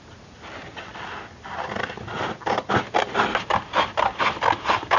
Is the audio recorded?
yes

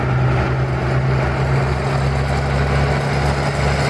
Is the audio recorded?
yes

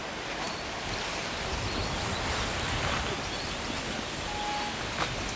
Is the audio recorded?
yes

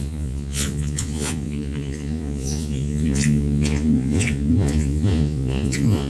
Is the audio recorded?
no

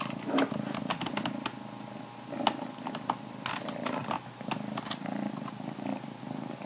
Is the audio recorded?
yes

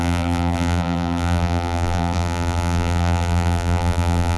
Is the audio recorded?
no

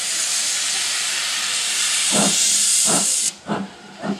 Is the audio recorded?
no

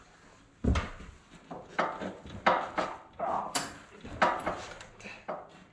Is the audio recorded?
yes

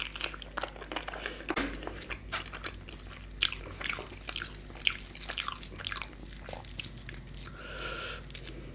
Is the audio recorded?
yes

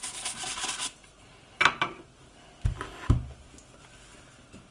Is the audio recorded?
yes